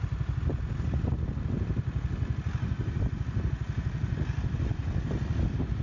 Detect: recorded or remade recorded